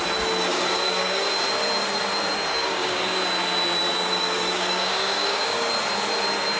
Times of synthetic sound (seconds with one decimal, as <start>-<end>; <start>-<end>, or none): 0.5-1.2; 2.5-3.2; 3.9-5.7